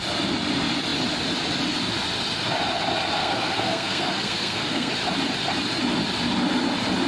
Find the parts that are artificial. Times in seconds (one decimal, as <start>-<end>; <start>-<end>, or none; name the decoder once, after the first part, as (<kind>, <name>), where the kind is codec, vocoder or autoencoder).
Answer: 3.2-4.9 (codec, SNAC)

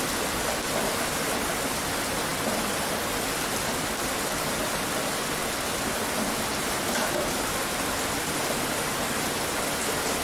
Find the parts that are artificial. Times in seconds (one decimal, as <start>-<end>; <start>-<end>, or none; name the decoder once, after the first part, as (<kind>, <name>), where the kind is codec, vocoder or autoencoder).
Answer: none